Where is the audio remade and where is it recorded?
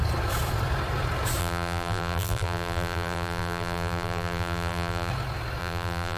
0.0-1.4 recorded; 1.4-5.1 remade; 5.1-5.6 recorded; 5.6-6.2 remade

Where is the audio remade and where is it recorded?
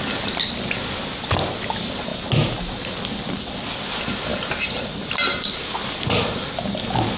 0.0-4.3 recorded; 4.3-6.4 remade; 6.4-7.2 recorded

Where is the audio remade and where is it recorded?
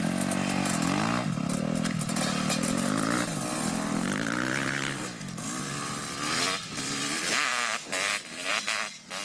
0.0-9.2 recorded